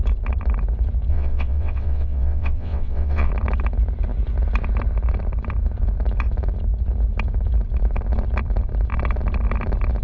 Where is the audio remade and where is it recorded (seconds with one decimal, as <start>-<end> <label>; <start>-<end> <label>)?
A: 0.0-1.1 recorded; 1.1-3.3 remade; 3.3-10.0 recorded